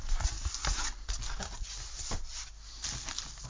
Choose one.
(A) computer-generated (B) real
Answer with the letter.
B